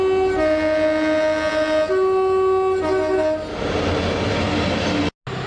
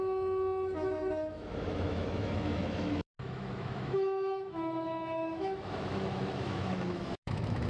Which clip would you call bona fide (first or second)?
first